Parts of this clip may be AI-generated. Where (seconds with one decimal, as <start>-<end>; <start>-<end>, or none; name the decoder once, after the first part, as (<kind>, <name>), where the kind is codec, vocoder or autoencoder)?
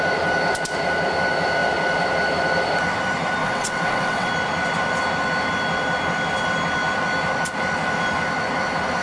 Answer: 3.4-4.3 (vocoder, WaveNeXt)